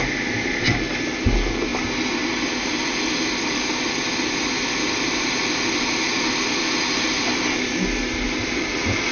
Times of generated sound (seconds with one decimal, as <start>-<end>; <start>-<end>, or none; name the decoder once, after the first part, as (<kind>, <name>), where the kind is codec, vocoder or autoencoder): none